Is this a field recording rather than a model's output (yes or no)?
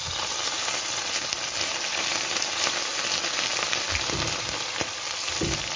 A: yes